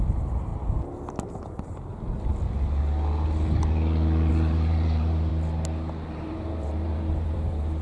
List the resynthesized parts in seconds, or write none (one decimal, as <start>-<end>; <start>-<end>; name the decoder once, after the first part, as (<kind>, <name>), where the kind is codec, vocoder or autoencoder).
0.0-0.5 (vocoder, BigVGAN v2); 1.3-2.3; 4.3-5.3; 6.1-7.8